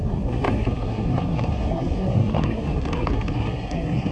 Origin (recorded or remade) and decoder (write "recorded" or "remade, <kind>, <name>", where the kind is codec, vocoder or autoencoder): remade, codec, SNAC